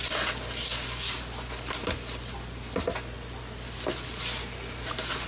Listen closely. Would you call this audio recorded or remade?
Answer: recorded